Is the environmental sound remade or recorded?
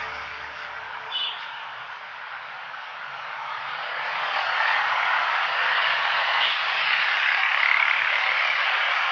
remade